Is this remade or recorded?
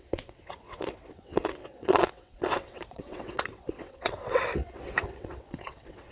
remade